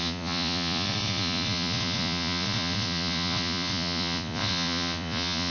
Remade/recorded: remade